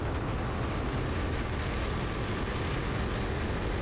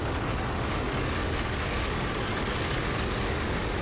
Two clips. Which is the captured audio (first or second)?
first